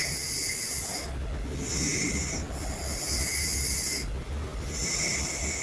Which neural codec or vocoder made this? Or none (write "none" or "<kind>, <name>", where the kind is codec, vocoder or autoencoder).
none